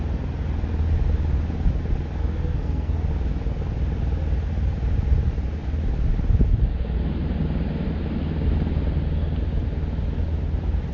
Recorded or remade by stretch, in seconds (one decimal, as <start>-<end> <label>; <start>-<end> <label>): 0.0-2.2 recorded; 2.2-3.1 remade; 3.1-10.9 recorded